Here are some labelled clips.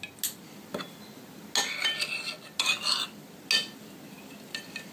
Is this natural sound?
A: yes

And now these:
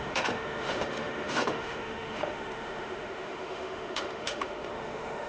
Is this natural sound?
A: no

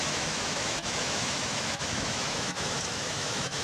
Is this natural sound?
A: no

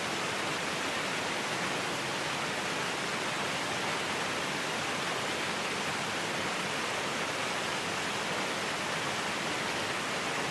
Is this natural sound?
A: yes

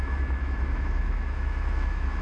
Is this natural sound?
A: no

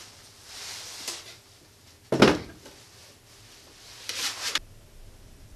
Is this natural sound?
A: yes